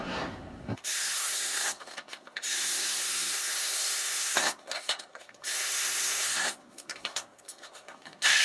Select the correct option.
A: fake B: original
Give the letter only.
A